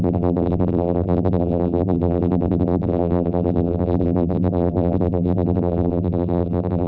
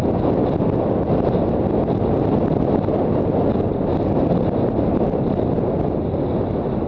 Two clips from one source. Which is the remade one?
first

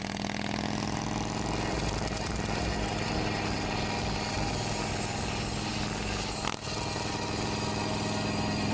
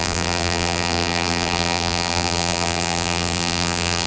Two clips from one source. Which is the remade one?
second